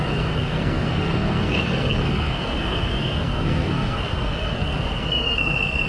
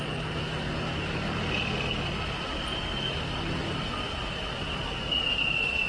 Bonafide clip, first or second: second